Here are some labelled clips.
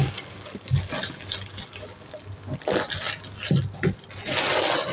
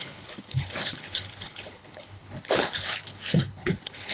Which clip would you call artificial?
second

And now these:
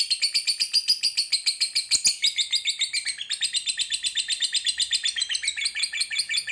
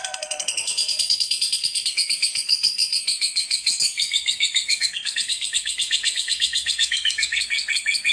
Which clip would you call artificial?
second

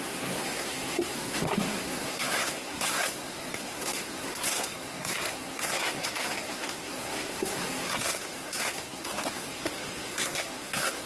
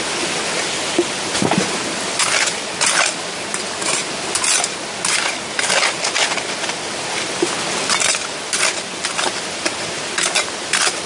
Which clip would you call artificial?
first